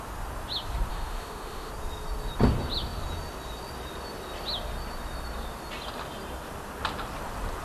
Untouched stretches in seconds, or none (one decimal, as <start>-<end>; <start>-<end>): 0.0-0.9; 1.7-7.6